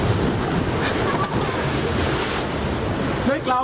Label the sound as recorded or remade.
recorded